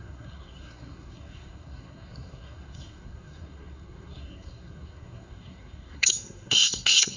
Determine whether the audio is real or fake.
fake